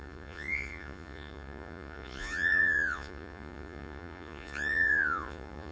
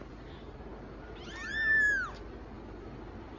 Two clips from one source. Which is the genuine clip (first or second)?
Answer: second